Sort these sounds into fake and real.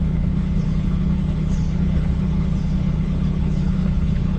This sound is fake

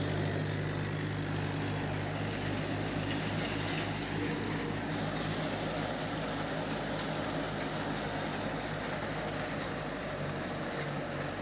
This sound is real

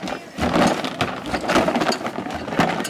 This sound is real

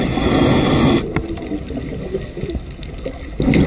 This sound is real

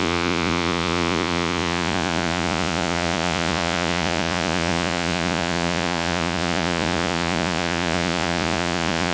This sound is fake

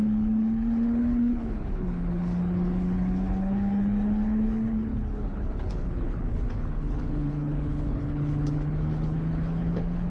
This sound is fake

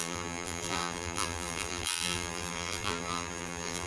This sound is fake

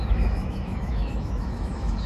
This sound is fake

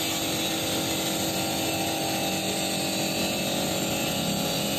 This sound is real